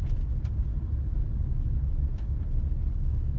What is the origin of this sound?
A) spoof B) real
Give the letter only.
B